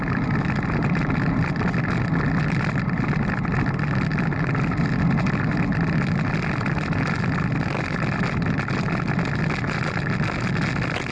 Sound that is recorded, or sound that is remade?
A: recorded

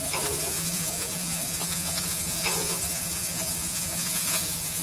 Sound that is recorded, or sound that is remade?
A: remade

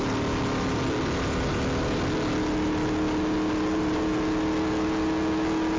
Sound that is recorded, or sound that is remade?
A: recorded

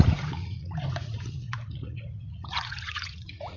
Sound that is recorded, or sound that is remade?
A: remade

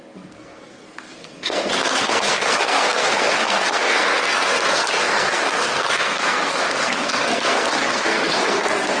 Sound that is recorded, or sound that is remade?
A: remade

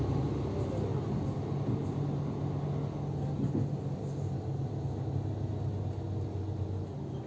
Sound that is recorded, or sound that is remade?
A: recorded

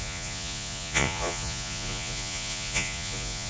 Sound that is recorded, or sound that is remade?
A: remade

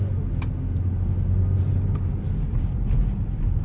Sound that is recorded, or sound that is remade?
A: recorded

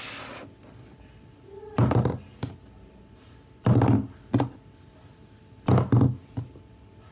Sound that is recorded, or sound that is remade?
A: recorded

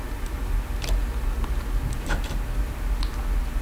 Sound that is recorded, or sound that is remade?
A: recorded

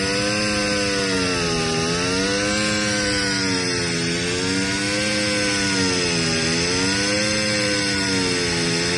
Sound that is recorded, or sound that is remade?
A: recorded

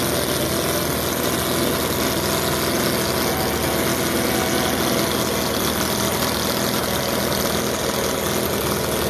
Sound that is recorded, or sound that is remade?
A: recorded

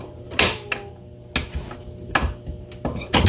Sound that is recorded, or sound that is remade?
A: recorded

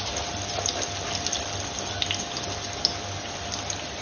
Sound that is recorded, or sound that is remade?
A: recorded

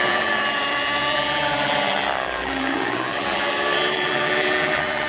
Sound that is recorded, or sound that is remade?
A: remade